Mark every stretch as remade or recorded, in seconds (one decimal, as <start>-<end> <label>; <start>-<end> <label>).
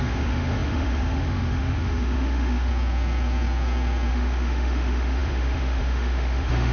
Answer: 0.0-2.7 remade; 2.7-4.1 recorded; 4.1-6.7 remade